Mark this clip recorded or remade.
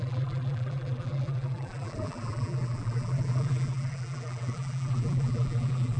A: remade